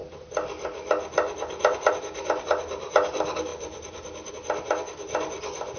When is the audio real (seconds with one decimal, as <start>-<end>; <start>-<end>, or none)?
0.0-3.5; 4.3-5.8